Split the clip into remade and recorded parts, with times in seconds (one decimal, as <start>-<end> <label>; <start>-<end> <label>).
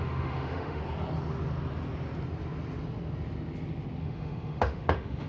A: 0.0-0.8 remade; 0.8-4.0 recorded; 4.0-5.3 remade